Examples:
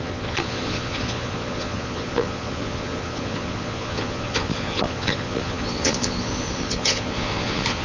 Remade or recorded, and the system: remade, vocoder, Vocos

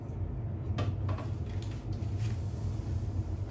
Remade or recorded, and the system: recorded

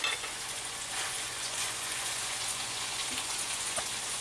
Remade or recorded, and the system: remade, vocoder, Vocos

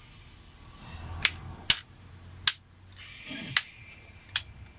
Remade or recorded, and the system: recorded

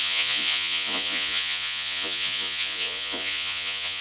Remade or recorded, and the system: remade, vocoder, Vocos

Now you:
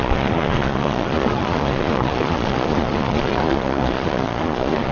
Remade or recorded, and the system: remade, vocoder, Vocos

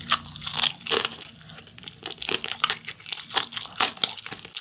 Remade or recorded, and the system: recorded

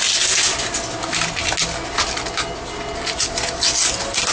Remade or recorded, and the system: recorded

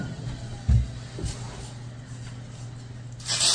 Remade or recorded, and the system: recorded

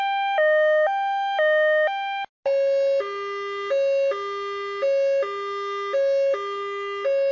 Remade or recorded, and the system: recorded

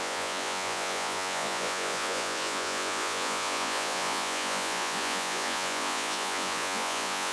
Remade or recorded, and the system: remade, vocoder, Vocos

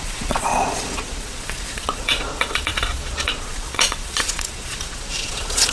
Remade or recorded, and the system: remade, vocoder, Vocos